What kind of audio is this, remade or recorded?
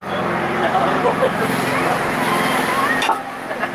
recorded